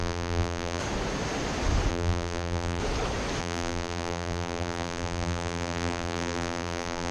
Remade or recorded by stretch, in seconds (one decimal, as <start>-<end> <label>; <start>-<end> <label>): 0.0-0.8 remade; 0.8-1.9 recorded; 1.9-2.8 remade; 2.8-3.4 recorded; 3.4-7.1 remade